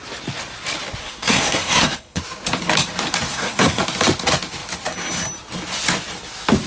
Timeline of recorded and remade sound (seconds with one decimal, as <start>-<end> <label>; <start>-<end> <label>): 0.0-1.0 recorded; 1.0-2.2 remade; 2.2-3.3 recorded; 3.3-3.8 remade; 3.8-6.7 recorded